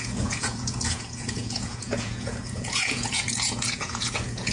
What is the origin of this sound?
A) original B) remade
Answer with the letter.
B